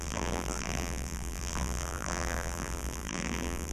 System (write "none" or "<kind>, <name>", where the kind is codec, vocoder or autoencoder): vocoder, BigVGAN v2